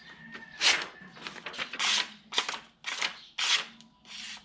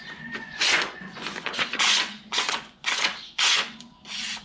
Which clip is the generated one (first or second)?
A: second